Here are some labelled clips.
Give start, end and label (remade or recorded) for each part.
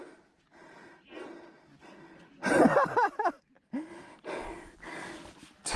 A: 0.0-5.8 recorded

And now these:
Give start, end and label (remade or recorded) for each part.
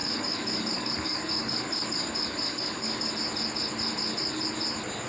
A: 0.0-3.1 remade; 3.1-5.1 recorded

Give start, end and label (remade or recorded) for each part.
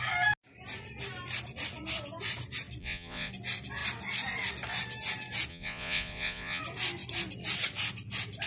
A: 0.0-2.8 recorded; 2.8-3.3 remade; 3.3-5.5 recorded; 5.5-6.6 remade; 6.6-8.5 recorded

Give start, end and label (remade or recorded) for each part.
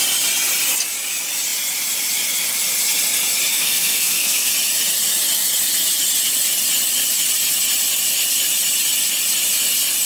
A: 0.0-3.5 recorded; 3.5-4.5 remade; 4.5-10.1 recorded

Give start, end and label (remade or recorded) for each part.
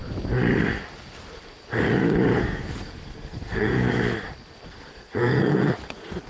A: 0.0-2.3 recorded; 2.3-3.9 remade; 3.9-4.7 recorded; 4.7-5.7 remade; 5.7-6.3 recorded